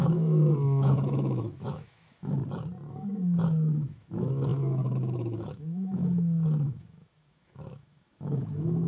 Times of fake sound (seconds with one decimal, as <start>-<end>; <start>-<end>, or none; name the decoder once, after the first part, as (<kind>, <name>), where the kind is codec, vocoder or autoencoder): 0.0-2.4 (autoencoder, DAC-VAE); 2.9-8.9